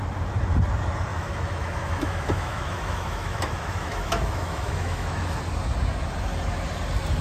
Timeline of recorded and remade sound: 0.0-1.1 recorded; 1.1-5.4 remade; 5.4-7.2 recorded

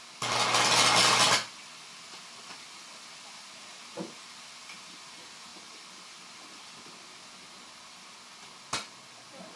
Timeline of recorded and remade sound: 0.0-5.5 recorded; 5.5-6.2 remade; 6.2-9.6 recorded

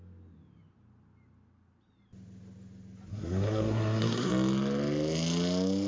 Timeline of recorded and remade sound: 0.0-3.1 recorded; 3.1-4.3 remade; 4.3-5.9 recorded

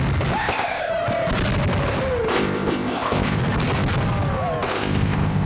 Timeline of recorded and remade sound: 0.0-0.4 recorded; 0.4-0.9 remade; 0.9-2.3 recorded; 2.3-3.4 remade; 3.4-4.7 recorded; 4.7-5.5 remade

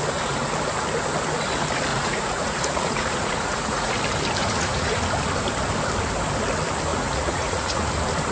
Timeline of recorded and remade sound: 0.0-1.9 recorded; 1.9-3.9 remade; 3.9-4.4 recorded; 4.4-5.0 remade; 5.0-6.9 recorded; 6.9-7.9 remade; 7.9-8.3 recorded

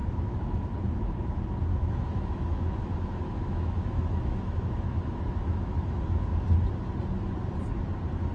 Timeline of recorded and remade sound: 0.0-1.1 remade; 1.1-1.7 recorded; 1.7-6.0 remade; 6.0-8.3 recorded

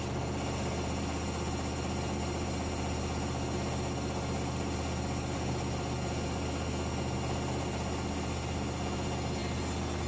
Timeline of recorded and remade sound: 0.0-10.1 recorded

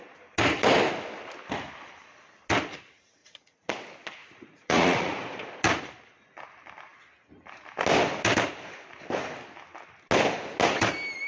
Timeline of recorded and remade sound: 0.0-3.2 recorded; 3.2-3.7 remade; 3.7-4.2 recorded; 4.2-5.8 remade; 5.8-11.3 recorded